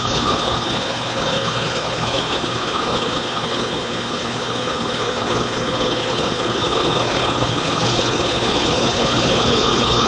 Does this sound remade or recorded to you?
remade